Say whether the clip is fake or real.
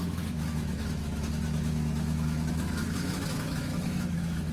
fake